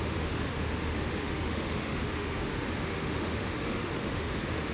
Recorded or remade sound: remade